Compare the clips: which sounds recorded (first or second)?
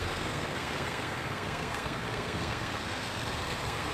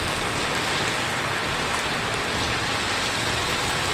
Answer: second